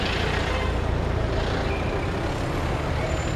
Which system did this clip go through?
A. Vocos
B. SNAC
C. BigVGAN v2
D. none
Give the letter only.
D